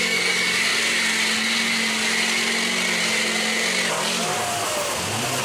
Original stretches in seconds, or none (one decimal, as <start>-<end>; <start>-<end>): 0.7-3.9; 4.3-5.4